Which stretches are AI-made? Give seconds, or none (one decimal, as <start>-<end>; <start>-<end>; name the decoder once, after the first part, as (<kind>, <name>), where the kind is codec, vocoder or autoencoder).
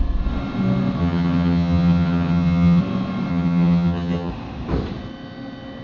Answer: 1.0-2.8 (vocoder, HiFi-GAN); 3.3-4.3